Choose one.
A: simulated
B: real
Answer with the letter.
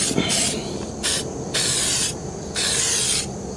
B